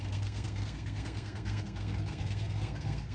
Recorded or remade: remade